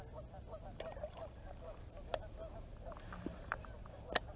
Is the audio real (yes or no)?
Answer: yes